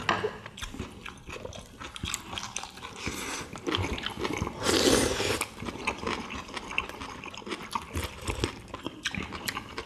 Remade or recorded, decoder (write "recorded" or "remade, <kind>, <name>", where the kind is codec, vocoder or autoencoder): recorded